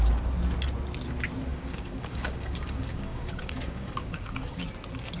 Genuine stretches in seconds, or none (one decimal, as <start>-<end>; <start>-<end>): 0.0-1.5; 4.6-5.2